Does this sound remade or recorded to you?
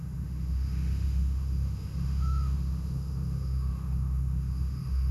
remade